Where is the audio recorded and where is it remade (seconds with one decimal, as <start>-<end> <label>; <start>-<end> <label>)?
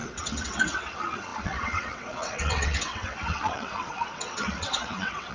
0.0-5.3 remade